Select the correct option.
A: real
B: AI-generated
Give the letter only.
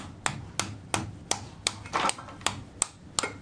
A